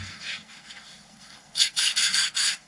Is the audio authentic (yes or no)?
no